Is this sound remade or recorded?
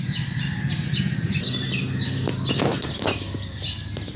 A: recorded